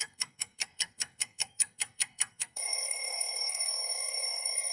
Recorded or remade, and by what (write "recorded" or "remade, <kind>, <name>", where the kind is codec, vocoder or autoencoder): remade, codec, SNAC